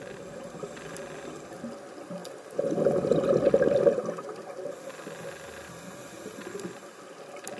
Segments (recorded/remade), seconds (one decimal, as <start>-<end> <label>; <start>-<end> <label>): 0.0-6.0 recorded; 6.0-6.7 remade; 6.7-7.6 recorded